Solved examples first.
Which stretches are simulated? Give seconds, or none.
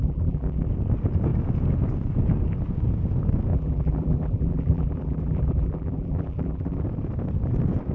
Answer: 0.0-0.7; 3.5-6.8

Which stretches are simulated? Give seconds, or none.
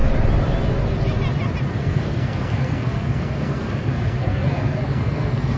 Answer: 1.7-5.6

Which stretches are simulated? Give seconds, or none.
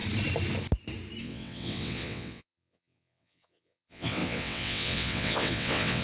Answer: 1.2-6.0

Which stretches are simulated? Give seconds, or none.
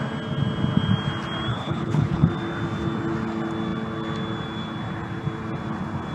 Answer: 1.5-2.3